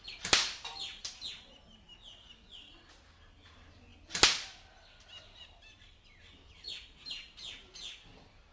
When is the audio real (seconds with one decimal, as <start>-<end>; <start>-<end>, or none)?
0.0-8.5